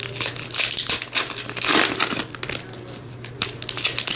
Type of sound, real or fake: real